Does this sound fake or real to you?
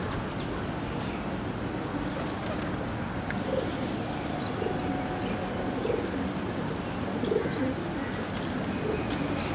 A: real